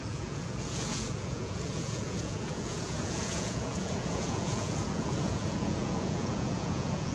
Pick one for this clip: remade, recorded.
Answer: remade